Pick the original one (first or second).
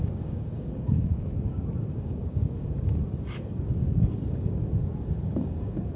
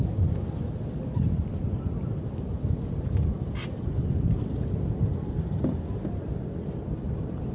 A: second